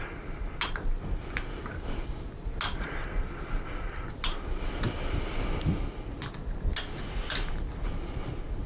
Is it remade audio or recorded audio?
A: recorded